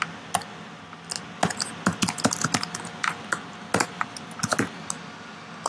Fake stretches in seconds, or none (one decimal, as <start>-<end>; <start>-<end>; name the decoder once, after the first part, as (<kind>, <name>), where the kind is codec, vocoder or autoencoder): 3.9-4.4 (vocoder, BigVGAN v2)